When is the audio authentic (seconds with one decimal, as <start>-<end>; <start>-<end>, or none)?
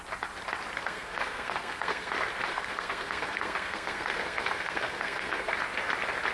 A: 0.0-0.8; 2.1-2.5; 5.5-6.3